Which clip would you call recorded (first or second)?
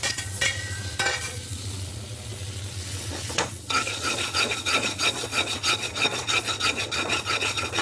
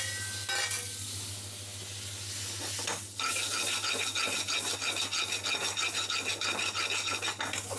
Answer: second